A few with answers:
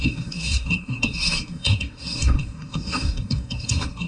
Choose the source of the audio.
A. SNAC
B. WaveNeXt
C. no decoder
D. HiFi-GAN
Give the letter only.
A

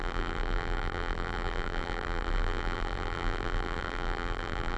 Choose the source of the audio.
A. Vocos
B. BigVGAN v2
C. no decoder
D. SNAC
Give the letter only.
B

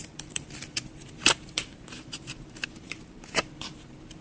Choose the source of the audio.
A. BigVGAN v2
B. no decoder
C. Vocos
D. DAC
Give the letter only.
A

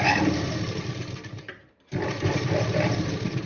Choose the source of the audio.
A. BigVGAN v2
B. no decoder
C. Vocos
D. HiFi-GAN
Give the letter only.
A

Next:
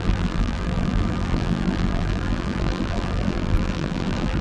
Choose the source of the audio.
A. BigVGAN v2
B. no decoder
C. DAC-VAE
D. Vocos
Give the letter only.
A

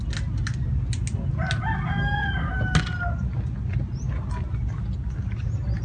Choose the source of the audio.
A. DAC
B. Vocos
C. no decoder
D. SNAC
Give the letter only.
C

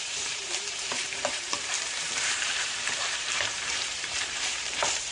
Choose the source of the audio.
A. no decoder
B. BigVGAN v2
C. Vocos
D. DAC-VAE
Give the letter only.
B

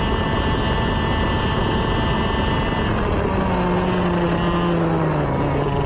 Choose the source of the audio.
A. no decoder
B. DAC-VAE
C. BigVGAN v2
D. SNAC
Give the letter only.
A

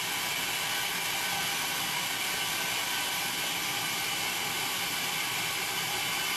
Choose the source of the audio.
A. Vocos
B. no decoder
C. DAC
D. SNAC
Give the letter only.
B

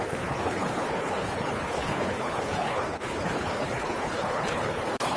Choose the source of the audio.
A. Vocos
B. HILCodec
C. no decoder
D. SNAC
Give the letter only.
B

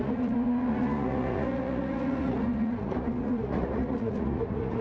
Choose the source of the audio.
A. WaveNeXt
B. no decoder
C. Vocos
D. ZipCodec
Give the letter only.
C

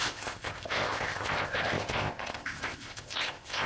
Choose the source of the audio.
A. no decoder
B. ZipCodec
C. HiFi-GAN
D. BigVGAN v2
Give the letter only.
B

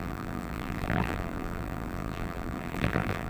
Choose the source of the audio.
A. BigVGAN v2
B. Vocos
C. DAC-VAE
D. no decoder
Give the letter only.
A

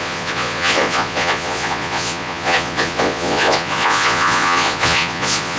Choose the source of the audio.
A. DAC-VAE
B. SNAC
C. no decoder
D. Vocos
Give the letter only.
D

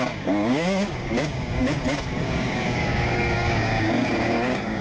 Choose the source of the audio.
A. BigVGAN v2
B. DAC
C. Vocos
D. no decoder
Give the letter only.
B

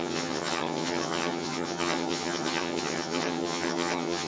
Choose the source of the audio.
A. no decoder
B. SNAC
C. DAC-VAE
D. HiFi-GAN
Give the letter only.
D